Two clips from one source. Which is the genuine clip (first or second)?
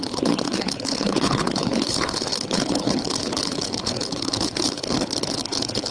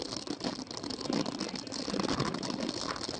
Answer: second